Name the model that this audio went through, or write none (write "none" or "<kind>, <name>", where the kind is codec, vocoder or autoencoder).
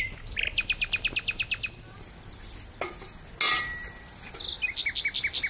none